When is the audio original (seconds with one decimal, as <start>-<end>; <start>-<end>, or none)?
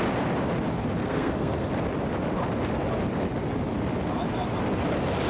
0.0-1.0; 1.7-5.3